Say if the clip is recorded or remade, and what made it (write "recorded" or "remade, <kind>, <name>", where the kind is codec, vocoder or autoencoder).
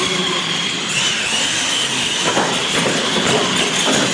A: recorded